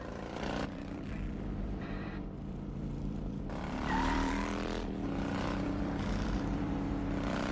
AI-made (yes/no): yes